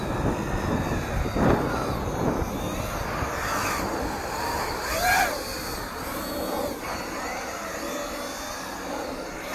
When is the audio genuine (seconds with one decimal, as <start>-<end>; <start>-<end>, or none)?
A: 0.0-9.5